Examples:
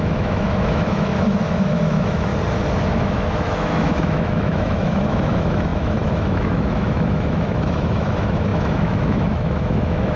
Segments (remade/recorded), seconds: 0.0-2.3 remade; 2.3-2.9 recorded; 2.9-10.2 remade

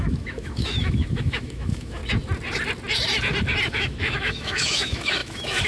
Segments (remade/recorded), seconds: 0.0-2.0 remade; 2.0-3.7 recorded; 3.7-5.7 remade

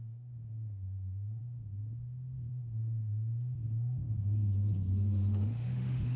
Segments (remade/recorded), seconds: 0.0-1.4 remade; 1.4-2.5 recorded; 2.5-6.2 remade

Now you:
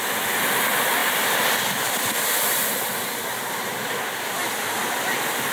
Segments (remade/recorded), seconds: 0.0-5.5 recorded

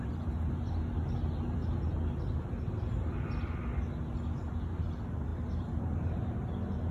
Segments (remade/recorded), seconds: 0.0-6.9 recorded